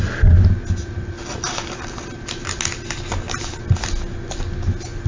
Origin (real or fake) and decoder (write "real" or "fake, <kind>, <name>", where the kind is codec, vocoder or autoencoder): real